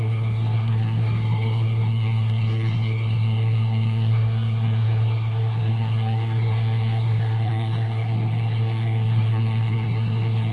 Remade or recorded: remade